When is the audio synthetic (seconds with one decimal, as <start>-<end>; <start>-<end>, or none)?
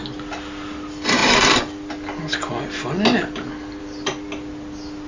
none